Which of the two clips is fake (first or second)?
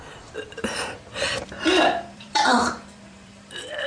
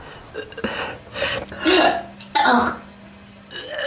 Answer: first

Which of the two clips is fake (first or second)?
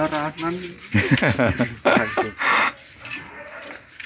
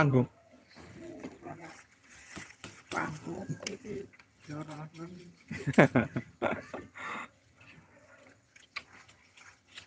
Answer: second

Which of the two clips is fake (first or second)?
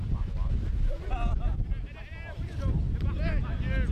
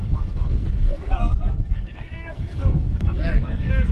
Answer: second